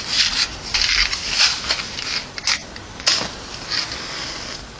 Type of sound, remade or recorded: recorded